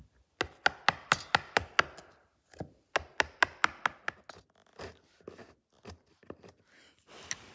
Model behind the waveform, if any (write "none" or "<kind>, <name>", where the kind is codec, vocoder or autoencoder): none